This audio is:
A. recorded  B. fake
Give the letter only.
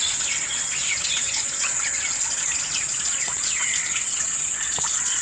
B